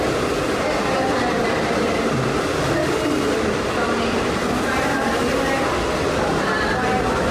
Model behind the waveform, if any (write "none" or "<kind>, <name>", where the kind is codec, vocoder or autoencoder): none